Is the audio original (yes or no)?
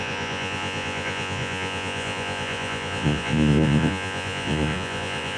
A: no